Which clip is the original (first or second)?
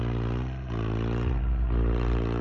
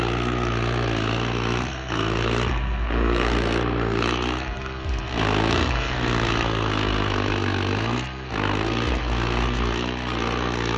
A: first